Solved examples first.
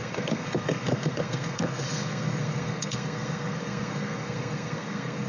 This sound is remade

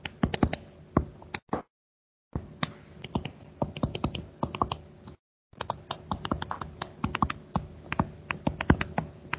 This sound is recorded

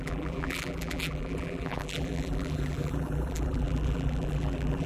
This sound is remade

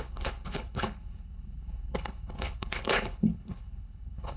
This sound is remade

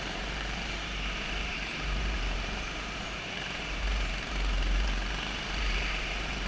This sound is remade